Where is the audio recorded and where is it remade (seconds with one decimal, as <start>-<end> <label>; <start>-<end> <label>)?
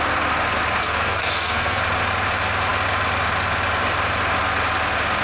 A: 0.0-0.8 recorded; 0.8-1.8 remade; 1.8-5.2 recorded